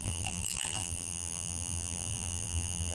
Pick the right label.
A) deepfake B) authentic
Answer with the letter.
A